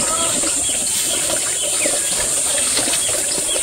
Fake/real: real